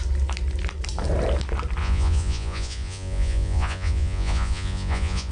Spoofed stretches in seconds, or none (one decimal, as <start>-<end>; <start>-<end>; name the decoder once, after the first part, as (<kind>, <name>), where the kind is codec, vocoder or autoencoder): 1.8-5.3 (vocoder, Vocos)